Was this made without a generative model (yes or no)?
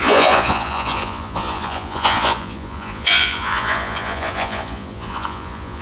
no